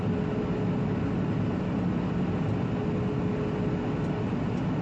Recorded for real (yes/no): yes